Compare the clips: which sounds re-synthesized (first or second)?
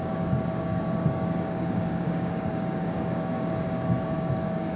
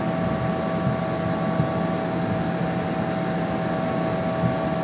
first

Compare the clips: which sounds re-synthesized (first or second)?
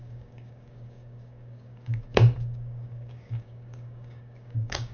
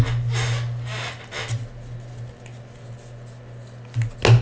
first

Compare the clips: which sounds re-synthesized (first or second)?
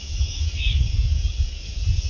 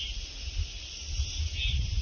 first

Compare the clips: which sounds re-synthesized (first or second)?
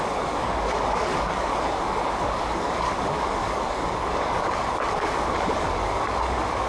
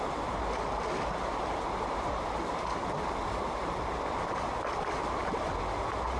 first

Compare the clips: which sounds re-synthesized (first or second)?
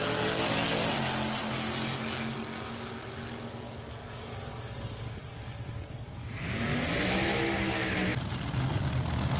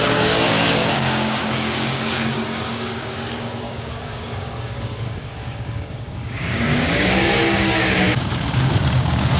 second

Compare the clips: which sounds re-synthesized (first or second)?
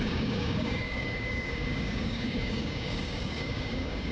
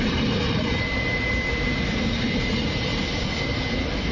first